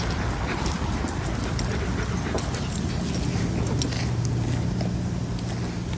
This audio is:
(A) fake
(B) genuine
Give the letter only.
B